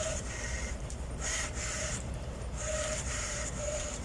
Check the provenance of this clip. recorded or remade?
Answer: remade